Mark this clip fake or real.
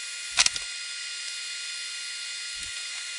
real